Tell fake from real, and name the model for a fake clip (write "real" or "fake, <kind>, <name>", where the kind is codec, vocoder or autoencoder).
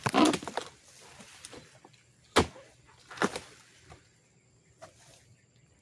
real